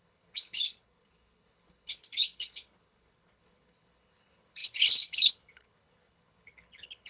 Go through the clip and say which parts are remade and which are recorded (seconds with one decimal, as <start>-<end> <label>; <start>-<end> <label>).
0.0-7.1 remade